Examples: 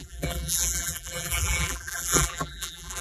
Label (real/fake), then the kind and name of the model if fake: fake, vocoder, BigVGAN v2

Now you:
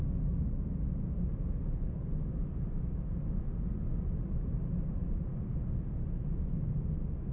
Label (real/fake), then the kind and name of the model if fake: real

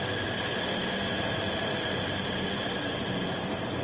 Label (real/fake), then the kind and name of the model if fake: fake, vocoder, BigVGAN v2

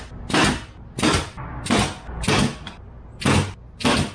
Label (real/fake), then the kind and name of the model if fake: real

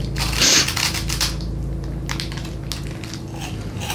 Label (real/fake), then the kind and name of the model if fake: real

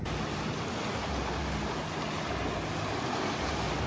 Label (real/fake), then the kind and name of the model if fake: real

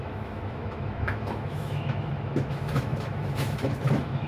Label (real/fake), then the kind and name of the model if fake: fake, autoencoder, DAC-VAE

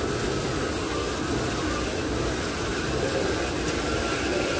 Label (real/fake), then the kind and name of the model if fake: real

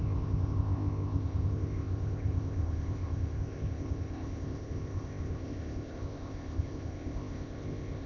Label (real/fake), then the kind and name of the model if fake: fake, codec, ZipCodec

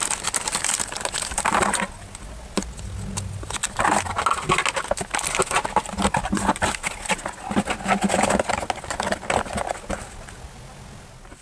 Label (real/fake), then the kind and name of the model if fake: real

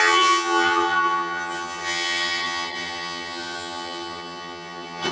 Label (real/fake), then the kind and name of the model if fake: fake, vocoder, HiFi-GAN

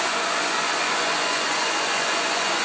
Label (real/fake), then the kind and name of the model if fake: fake, vocoder, Vocos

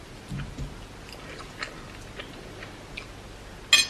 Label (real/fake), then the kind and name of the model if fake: real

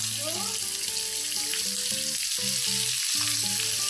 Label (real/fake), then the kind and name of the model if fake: real